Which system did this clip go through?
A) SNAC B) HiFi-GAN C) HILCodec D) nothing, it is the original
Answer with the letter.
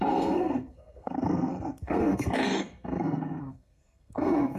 A